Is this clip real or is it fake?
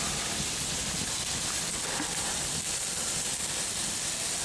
real